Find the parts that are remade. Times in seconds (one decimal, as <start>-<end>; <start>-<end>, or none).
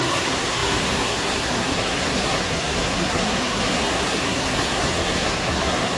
0.0-6.0